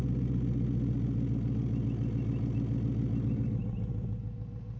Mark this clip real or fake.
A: real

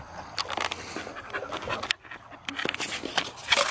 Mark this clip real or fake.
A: real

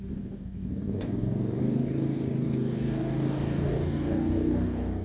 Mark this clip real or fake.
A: fake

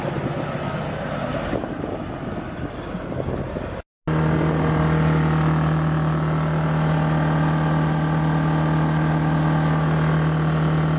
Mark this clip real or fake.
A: real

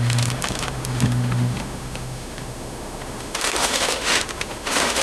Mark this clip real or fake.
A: fake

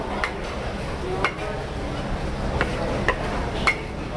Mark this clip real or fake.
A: real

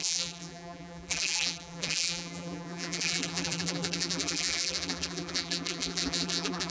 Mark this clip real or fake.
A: fake